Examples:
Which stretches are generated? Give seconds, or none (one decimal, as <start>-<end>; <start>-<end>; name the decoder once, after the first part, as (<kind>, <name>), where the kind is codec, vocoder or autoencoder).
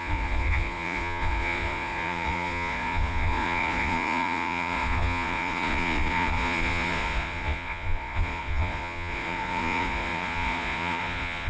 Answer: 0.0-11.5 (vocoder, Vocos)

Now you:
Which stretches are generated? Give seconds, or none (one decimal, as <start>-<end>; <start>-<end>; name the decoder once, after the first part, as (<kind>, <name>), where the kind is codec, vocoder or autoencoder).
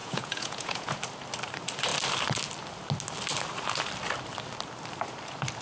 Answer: 0.0-1.0 (vocoder, Vocos)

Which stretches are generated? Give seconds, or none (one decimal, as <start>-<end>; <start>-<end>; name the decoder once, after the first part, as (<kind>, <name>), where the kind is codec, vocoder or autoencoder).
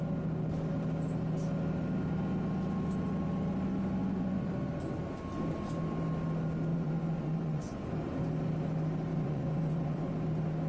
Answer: 4.0-4.5 (vocoder, Vocos); 6.7-7.9; 9.1-10.1